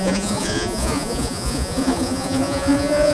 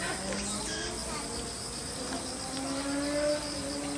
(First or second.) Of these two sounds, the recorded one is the second